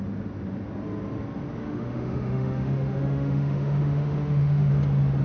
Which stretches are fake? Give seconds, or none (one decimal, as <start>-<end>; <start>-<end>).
1.6-4.7